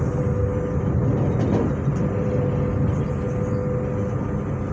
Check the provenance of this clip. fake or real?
real